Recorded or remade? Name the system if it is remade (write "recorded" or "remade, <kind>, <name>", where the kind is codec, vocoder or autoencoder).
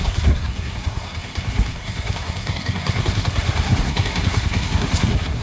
remade, codec, SNAC